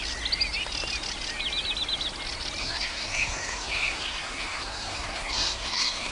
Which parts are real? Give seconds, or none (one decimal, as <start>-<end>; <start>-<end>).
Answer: 0.0-2.6

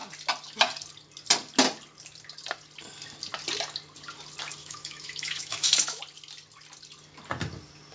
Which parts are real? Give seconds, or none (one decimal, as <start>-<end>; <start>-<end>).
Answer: 0.0-4.6; 6.0-7.9

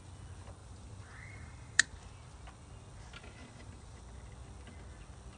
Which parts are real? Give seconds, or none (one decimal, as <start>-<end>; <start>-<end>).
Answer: 0.0-0.6; 1.9-3.4; 4.0-5.4